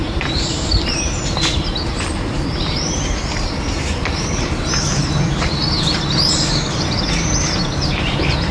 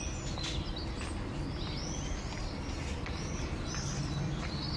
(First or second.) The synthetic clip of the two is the first